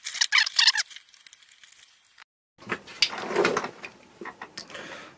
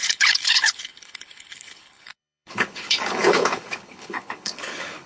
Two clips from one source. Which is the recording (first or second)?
first